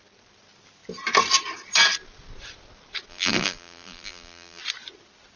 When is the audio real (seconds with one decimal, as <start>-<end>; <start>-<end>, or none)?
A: 0.0-3.1; 4.6-5.4